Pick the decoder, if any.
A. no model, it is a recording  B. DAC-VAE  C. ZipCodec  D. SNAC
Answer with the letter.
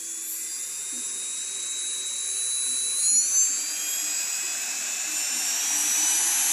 A